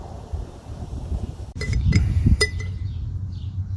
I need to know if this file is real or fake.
fake